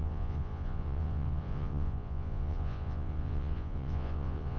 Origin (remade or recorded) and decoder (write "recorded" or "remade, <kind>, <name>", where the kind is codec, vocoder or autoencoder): remade, vocoder, Vocos